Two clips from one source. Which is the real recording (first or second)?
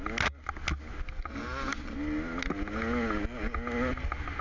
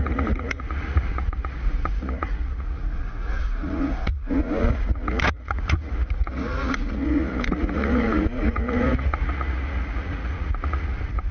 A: first